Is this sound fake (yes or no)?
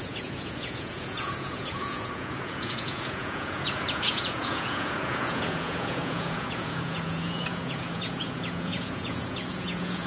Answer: yes